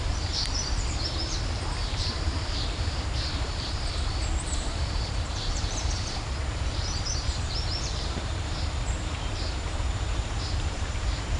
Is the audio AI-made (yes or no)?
yes